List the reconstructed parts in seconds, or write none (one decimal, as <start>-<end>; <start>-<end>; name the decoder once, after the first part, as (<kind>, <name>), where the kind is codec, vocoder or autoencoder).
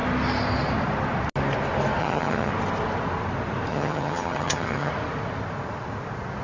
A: 2.0-2.5 (vocoder, HiFi-GAN); 3.7-4.9